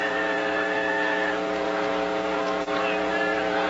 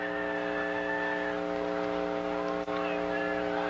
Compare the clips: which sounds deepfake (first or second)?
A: first